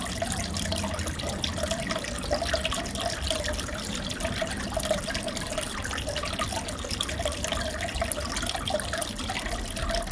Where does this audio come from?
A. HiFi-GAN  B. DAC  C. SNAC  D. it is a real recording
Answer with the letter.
D